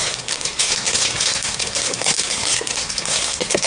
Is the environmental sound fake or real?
fake